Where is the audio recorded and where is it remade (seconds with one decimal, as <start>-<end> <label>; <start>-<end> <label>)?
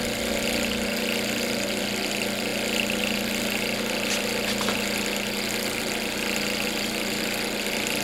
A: 0.0-8.0 recorded